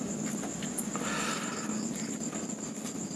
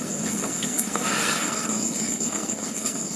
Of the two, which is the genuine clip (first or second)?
first